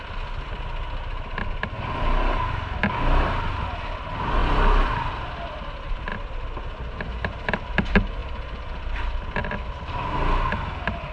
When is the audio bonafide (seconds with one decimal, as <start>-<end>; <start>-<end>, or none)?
0.0-4.4; 4.9-6.1; 6.6-8.2; 9.4-11.1